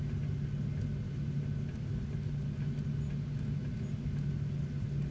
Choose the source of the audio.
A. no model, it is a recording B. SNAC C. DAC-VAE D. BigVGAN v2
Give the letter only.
A